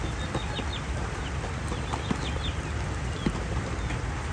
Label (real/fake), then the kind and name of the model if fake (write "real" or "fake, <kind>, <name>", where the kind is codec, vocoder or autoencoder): real